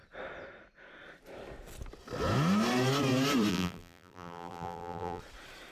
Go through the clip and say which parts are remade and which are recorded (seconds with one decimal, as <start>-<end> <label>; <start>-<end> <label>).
0.0-3.5 recorded; 3.5-5.2 remade; 5.2-5.7 recorded